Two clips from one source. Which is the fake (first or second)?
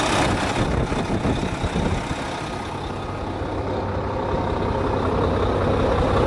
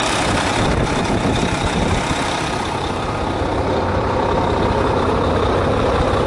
second